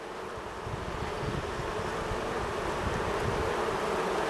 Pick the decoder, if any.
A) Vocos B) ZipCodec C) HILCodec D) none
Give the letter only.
D